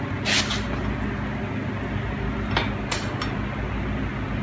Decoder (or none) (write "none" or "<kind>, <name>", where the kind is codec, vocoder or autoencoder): none